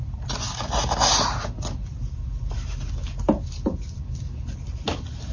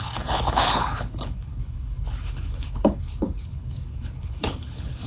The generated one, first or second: second